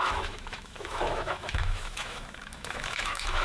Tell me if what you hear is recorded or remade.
remade